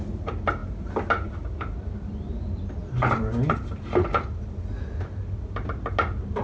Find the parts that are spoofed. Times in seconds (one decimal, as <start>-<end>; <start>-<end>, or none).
none